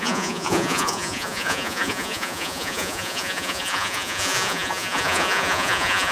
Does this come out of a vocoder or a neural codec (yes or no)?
yes